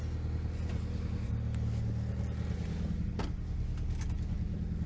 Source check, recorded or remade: recorded